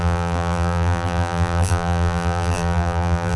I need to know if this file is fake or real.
fake